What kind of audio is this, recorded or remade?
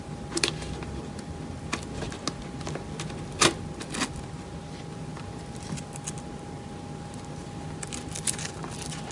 recorded